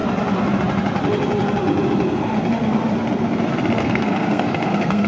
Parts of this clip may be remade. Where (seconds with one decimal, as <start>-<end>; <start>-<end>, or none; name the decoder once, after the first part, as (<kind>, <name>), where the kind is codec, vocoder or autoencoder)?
3.8-5.1 (codec, SNAC)